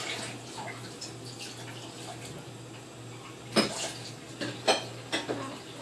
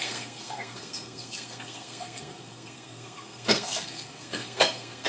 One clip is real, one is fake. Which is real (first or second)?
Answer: first